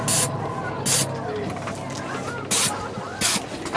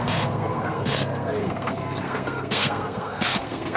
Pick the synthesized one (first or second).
second